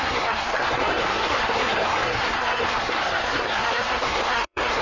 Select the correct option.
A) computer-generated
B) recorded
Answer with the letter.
A